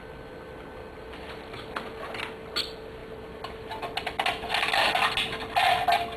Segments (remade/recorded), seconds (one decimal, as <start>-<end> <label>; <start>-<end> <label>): 0.0-6.2 recorded